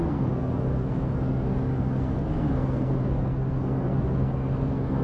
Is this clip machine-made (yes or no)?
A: yes